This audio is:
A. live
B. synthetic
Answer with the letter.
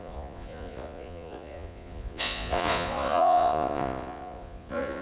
B